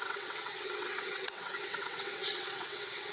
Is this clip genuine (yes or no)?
no